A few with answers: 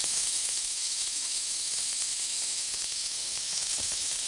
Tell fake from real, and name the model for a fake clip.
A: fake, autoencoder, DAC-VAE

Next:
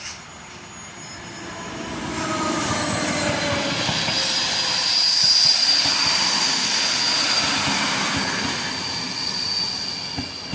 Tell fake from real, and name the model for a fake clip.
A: real